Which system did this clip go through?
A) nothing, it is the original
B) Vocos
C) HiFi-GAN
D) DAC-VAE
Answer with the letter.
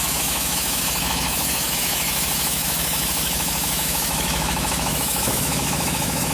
D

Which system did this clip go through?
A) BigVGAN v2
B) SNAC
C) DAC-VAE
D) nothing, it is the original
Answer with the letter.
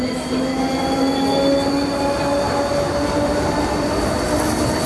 D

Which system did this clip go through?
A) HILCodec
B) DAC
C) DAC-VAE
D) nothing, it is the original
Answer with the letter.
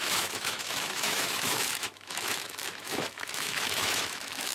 C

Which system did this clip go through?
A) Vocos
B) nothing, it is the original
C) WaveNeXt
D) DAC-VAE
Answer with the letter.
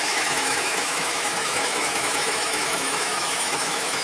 D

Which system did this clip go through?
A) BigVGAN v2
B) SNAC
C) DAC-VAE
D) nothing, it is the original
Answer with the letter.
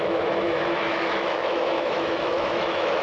C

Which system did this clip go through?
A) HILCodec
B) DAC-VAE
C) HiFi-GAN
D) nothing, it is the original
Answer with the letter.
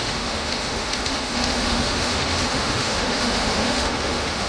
B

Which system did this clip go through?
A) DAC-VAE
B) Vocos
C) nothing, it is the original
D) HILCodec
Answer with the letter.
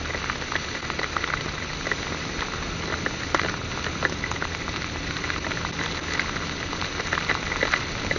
C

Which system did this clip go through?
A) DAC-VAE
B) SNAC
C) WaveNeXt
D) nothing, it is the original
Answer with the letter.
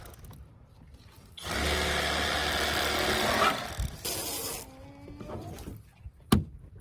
D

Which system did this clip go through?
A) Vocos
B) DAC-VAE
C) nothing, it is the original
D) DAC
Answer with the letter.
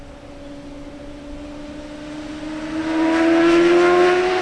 C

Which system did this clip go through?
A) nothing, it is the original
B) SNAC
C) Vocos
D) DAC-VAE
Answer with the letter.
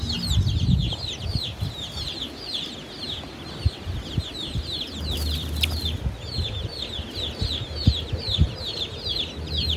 A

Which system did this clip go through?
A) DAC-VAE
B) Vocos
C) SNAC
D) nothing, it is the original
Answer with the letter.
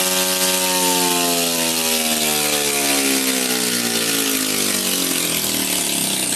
D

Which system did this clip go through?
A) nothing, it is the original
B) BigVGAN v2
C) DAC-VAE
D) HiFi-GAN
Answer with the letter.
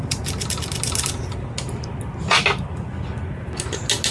A